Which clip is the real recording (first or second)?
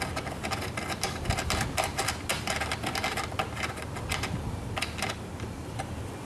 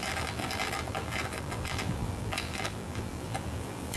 first